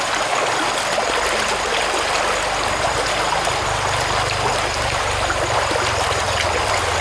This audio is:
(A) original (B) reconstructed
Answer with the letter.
A